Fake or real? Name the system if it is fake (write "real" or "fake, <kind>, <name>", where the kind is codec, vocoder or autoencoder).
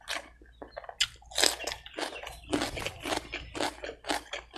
real